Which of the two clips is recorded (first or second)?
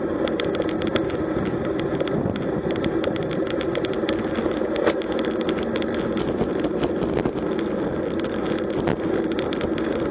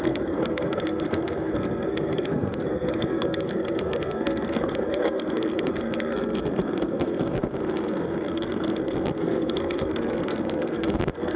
first